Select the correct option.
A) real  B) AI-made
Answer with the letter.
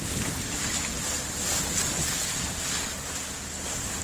A